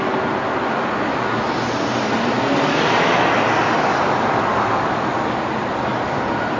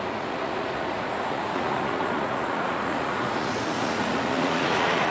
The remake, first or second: second